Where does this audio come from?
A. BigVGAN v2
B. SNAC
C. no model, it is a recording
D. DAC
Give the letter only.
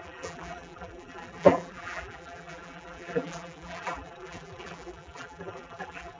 A